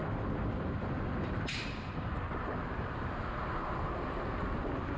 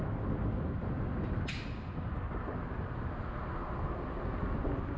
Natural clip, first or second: second